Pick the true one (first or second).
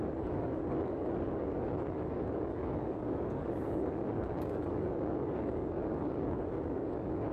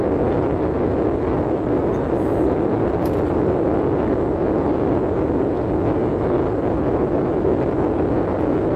second